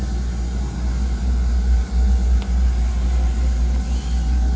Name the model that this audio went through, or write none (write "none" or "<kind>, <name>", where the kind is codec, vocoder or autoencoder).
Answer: none